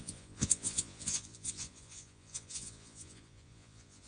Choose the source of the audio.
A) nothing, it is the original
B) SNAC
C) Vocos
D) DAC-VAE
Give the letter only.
C